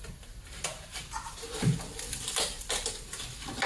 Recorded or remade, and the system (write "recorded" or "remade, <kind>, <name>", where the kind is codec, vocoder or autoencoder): recorded